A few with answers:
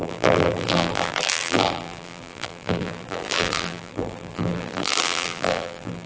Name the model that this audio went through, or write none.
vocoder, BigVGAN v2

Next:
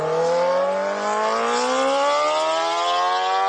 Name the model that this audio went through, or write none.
none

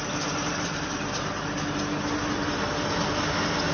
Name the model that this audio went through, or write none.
none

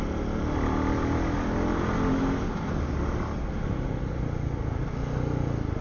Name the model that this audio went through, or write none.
none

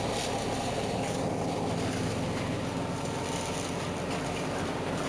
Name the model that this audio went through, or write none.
none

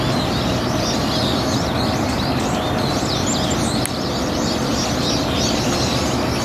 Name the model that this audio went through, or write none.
none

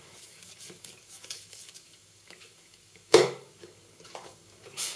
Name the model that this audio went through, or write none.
codec, DAC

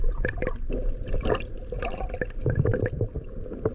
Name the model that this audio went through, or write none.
none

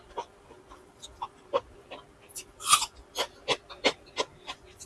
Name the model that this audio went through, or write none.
none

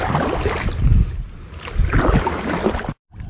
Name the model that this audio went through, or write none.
none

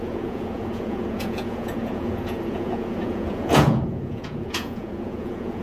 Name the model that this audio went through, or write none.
vocoder, Vocos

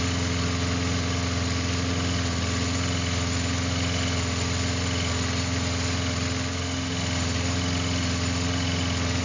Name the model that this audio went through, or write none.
none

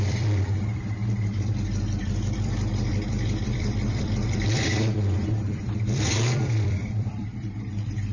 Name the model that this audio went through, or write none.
vocoder, BigVGAN v2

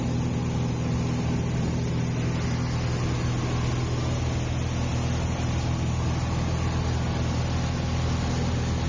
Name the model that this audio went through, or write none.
none